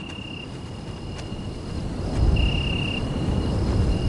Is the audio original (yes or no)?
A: no